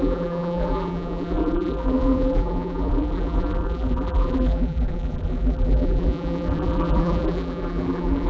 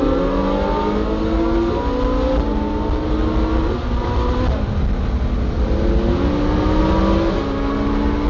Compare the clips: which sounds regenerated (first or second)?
first